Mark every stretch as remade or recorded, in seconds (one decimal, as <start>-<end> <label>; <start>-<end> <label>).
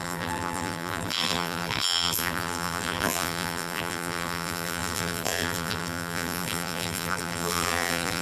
0.0-8.2 remade